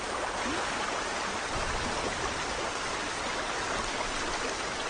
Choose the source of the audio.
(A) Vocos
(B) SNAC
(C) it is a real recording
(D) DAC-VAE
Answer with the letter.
C